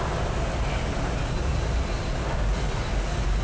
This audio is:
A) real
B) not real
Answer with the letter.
A